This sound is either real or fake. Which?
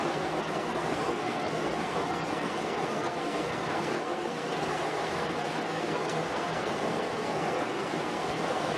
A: fake